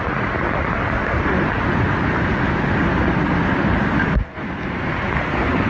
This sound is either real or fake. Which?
real